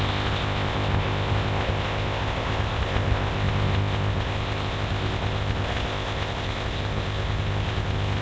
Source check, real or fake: fake